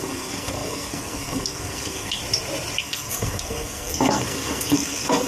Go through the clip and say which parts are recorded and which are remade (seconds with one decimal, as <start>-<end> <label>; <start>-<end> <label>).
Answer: 0.0-2.2 remade; 2.2-2.8 recorded; 2.8-5.3 remade